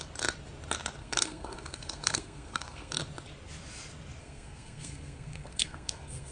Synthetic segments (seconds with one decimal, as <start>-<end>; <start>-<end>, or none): 1.0-3.0; 4.2-6.3